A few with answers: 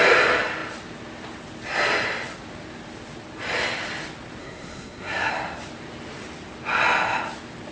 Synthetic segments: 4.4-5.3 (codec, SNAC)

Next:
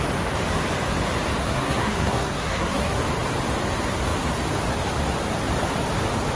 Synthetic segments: 1.4-3.0 (codec, SNAC)

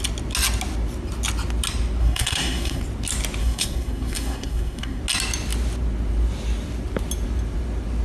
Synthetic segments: 2.0-2.8 (codec, SNAC); 3.4-5.0